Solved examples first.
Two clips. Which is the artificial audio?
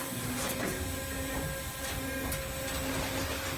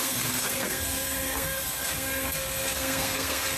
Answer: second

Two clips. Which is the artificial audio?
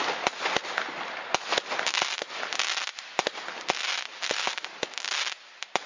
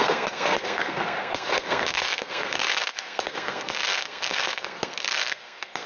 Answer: second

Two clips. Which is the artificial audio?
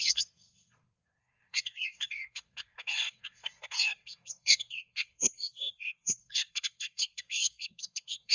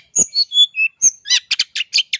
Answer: first